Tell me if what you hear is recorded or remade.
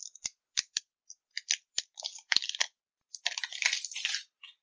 recorded